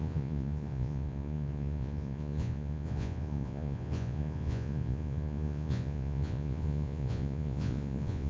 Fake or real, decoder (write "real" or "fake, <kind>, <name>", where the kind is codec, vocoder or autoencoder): fake, vocoder, Vocos